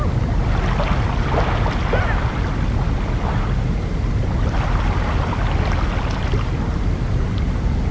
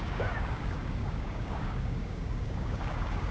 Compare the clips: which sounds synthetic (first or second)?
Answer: second